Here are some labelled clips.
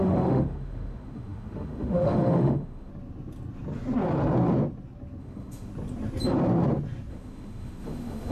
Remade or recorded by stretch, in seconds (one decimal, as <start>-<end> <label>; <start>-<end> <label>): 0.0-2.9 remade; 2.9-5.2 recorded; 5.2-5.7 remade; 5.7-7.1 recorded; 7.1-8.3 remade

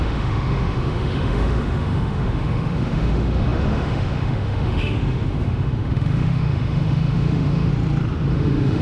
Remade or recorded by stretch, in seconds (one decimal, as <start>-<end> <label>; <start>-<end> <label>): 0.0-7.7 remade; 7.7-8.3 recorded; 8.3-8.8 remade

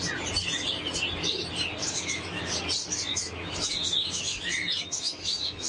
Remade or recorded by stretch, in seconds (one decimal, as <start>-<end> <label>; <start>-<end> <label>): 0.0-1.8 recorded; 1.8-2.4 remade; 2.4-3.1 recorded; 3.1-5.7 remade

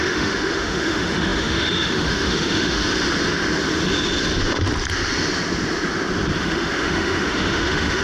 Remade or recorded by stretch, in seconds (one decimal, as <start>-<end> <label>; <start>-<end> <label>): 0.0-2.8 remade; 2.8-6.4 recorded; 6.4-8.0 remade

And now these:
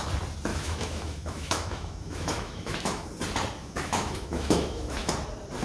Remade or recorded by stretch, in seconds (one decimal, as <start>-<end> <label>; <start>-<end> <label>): 0.0-0.5 recorded; 0.5-3.1 remade; 3.1-3.6 recorded; 3.6-5.1 remade; 5.1-5.6 recorded

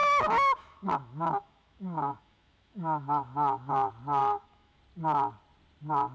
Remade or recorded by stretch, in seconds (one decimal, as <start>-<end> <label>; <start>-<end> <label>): 0.0-3.7 remade; 3.7-4.2 recorded; 4.2-4.8 remade; 4.8-6.1 recorded

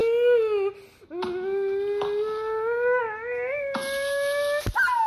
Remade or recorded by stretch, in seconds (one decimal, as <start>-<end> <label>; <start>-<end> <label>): 0.0-5.1 recorded